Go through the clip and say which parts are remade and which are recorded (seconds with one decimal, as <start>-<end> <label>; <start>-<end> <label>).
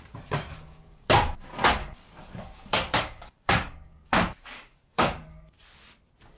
0.0-0.5 recorded; 0.5-1.1 remade; 1.1-1.8 recorded; 1.8-5.6 remade; 5.6-6.4 recorded